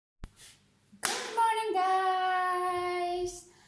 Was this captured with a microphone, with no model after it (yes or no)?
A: yes